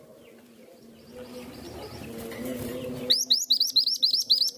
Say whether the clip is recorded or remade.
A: recorded